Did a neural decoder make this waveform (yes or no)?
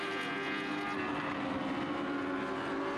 no